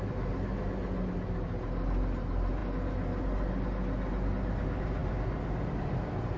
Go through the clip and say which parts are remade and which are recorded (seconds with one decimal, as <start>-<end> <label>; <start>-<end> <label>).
0.0-6.4 recorded